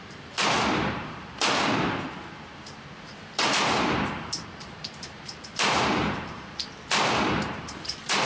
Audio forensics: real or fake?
fake